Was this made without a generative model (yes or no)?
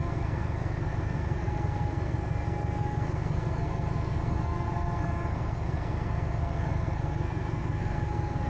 no